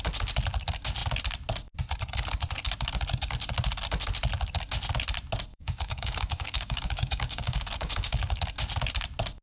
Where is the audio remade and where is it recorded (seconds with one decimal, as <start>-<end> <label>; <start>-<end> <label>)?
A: 0.0-5.5 recorded; 5.5-8.4 remade; 8.4-9.4 recorded